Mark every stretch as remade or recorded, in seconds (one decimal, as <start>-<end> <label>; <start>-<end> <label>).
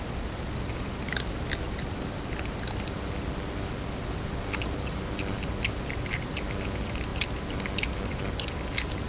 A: 0.0-9.1 recorded